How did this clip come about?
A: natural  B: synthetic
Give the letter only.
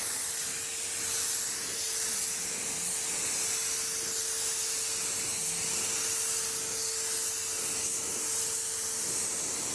A